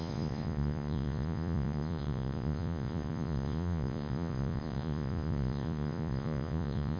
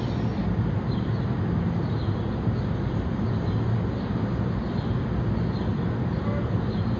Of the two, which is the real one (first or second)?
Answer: second